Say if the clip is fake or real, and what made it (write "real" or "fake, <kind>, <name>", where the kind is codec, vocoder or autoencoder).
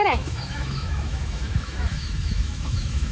fake, autoencoder, DAC-VAE